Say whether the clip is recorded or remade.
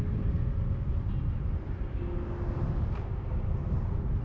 recorded